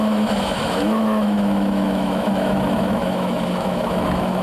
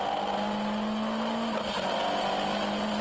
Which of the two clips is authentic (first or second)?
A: second